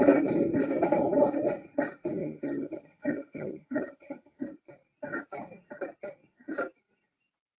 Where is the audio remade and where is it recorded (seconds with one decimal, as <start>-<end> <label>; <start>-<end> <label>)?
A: 0.0-2.2 recorded; 2.2-4.4 remade; 4.4-7.6 recorded